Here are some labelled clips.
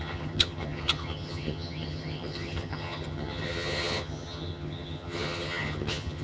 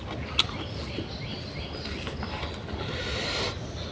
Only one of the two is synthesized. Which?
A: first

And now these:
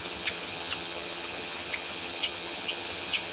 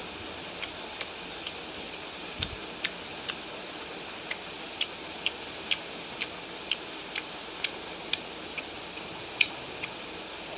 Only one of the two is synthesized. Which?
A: first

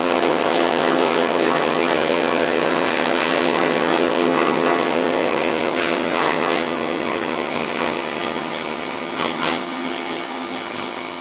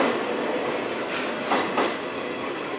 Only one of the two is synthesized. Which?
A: first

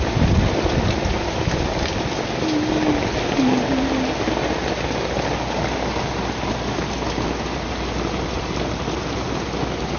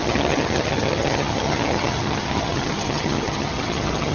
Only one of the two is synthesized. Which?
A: second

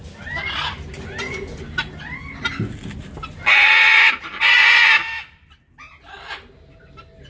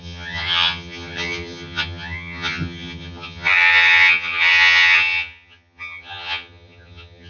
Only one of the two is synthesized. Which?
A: second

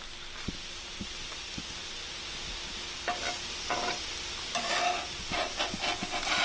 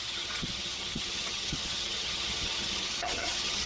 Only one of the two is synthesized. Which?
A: second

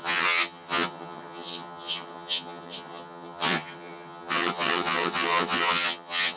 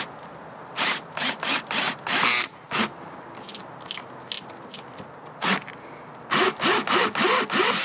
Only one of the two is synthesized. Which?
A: first